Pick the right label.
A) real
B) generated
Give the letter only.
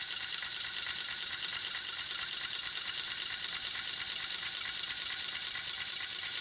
A